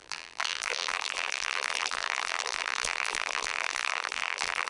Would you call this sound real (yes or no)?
no